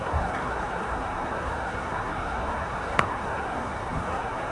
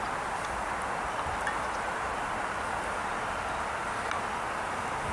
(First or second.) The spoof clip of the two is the first